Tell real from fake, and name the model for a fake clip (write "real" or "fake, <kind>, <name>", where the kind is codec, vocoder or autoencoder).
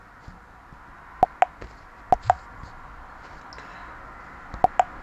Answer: real